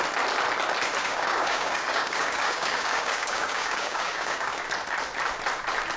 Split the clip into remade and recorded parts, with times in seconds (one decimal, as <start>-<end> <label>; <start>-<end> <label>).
0.0-1.0 recorded; 1.0-4.6 remade; 4.6-6.0 recorded